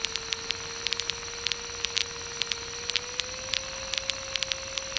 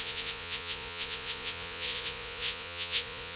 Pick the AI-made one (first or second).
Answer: second